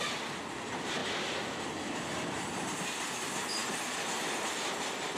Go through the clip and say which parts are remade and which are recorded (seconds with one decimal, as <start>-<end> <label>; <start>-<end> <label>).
0.0-5.2 recorded